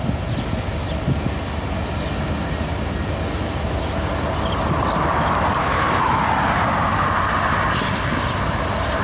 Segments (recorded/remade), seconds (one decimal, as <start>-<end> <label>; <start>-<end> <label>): 0.0-5.6 recorded; 5.6-6.2 remade; 6.2-9.0 recorded